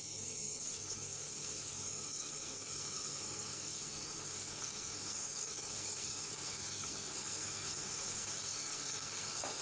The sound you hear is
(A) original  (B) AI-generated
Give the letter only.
B